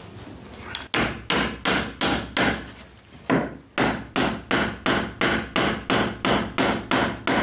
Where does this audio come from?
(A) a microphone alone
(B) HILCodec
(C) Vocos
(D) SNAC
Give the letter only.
A